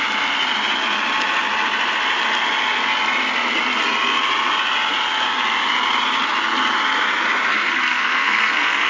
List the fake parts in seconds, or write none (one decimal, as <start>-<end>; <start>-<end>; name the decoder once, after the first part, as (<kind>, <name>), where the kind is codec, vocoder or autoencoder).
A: 7.5-8.9 (codec, SNAC)